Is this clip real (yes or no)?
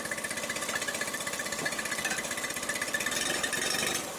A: yes